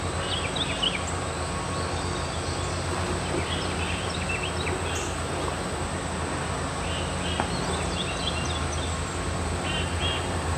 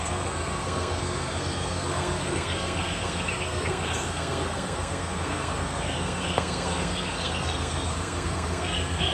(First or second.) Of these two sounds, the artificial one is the second